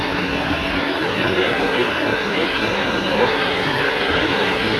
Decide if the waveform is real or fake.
fake